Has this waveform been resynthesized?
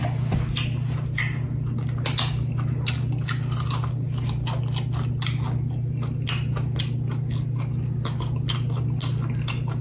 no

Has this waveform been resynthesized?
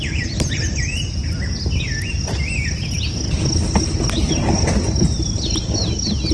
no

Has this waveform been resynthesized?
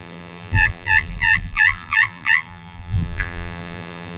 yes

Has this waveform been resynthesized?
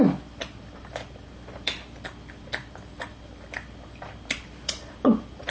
yes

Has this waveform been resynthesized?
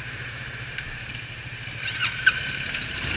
yes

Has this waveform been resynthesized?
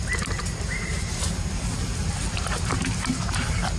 yes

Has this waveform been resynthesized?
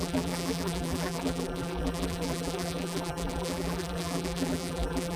yes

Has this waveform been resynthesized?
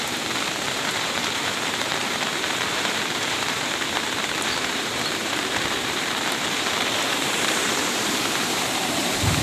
yes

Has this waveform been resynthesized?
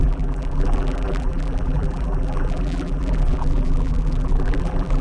yes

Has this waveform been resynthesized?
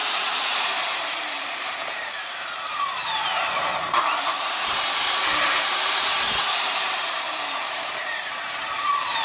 yes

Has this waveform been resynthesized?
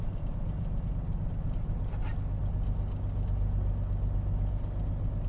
no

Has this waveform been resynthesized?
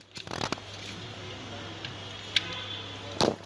no